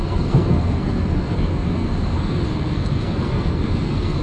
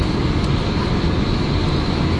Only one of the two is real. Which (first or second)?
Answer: second